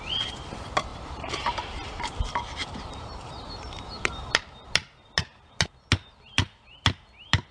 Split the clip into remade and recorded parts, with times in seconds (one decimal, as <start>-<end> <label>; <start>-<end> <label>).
0.0-0.9 recorded; 0.9-1.5 remade; 1.5-2.6 recorded; 2.6-4.1 remade; 4.1-7.5 recorded